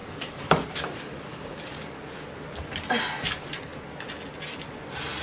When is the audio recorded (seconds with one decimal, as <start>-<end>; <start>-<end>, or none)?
2.0-5.2